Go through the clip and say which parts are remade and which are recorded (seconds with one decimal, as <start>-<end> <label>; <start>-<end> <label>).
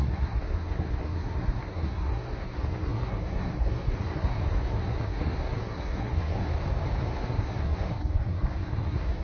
0.0-6.5 remade; 6.5-7.0 recorded; 7.0-9.2 remade